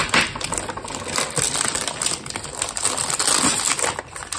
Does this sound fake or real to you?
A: real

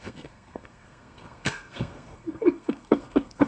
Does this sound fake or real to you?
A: fake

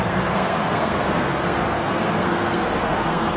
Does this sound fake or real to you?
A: fake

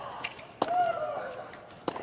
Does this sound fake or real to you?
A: real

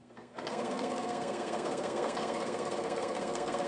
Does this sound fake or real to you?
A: fake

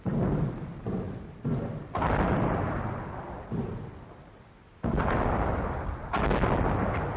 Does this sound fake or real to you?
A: real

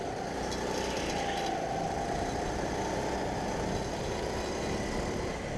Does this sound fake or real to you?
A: real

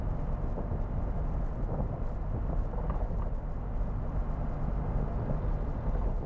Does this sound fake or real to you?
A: real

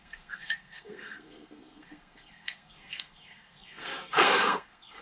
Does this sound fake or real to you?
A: fake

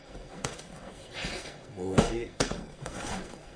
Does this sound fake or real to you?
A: fake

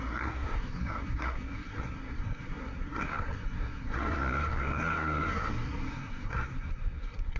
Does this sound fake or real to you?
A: fake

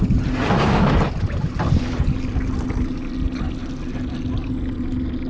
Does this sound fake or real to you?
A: real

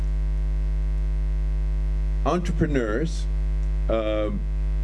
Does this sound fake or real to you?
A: real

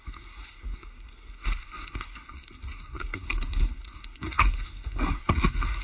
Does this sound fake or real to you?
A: fake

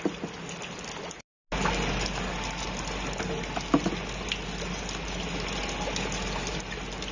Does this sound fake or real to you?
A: real